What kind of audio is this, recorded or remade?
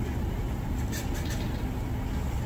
recorded